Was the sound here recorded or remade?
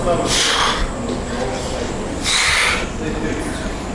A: recorded